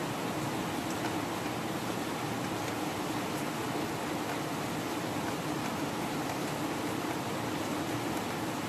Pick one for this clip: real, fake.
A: real